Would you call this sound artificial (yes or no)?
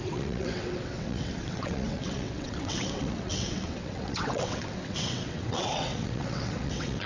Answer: yes